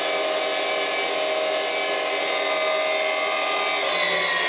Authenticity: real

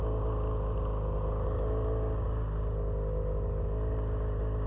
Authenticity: real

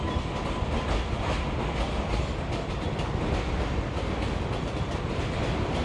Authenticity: real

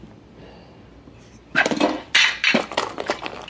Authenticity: real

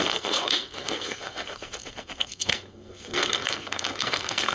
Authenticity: fake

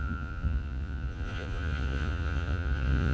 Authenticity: fake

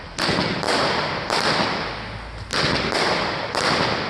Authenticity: real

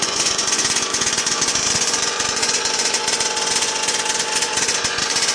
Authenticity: fake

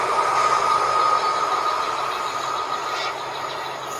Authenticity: real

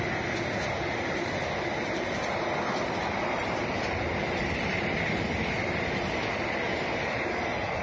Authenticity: real